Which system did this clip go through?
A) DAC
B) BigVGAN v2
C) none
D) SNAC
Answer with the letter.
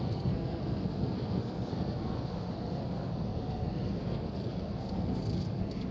D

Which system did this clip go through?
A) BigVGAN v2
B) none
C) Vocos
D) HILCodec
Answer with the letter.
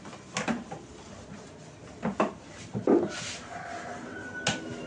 B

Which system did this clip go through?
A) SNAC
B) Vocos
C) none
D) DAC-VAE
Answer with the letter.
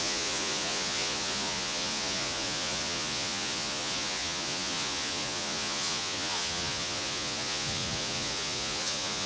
B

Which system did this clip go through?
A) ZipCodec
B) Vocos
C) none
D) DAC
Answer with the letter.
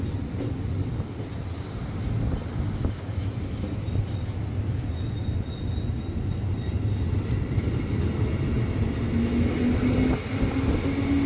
C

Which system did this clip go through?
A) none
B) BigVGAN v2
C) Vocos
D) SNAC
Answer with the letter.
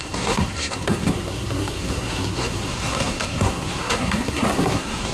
D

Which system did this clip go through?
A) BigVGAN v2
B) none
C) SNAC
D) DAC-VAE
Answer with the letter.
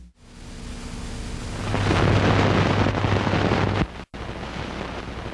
B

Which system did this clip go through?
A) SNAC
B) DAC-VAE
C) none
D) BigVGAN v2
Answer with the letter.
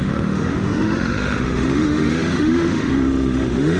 B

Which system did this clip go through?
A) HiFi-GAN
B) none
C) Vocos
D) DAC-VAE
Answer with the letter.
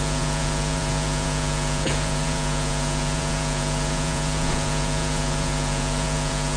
C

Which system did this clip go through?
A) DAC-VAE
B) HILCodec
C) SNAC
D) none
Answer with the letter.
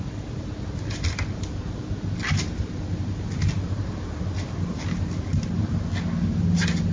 D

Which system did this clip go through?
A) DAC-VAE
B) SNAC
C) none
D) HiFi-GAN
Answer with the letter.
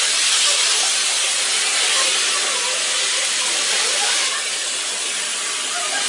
C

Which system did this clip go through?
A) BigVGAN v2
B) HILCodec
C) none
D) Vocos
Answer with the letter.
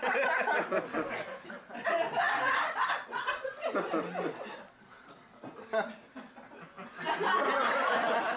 C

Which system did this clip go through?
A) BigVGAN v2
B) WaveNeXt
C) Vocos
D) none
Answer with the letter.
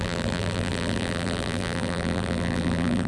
A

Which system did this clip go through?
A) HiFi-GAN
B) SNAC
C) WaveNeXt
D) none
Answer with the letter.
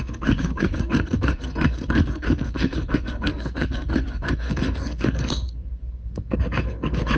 B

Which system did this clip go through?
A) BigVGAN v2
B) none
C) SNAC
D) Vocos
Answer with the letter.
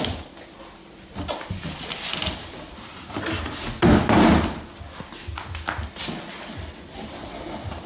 B